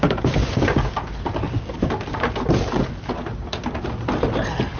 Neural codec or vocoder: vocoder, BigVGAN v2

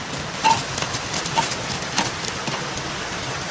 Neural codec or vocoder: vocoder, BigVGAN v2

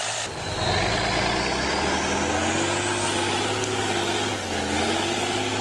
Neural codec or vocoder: none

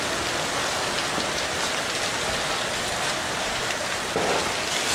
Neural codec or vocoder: none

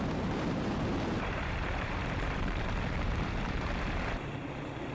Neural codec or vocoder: vocoder, BigVGAN v2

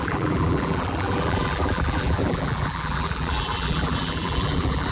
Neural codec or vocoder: vocoder, BigVGAN v2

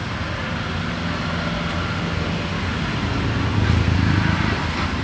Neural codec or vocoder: none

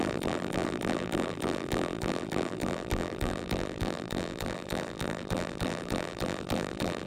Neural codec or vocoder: vocoder, BigVGAN v2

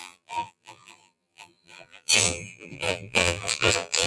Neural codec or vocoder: vocoder, BigVGAN v2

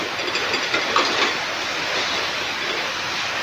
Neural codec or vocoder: vocoder, BigVGAN v2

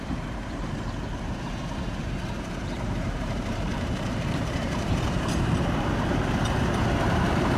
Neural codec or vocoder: vocoder, BigVGAN v2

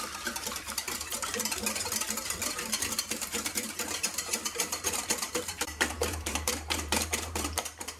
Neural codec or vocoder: vocoder, BigVGAN v2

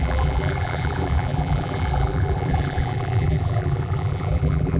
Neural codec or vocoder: vocoder, BigVGAN v2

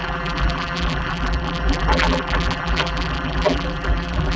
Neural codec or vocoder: vocoder, BigVGAN v2